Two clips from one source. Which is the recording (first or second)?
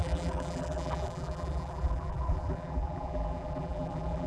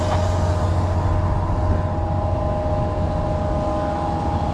second